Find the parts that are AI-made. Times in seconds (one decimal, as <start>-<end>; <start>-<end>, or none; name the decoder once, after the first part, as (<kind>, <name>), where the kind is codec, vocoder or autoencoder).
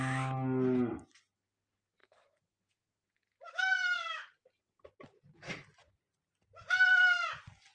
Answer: 2.0-3.7 (autoencoder, DAC-VAE)